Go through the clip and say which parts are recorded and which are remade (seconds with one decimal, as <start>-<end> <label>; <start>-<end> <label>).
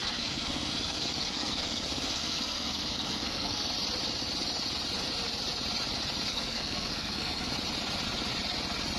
0.0-3.7 remade; 3.7-6.3 recorded; 6.3-7.5 remade; 7.5-9.0 recorded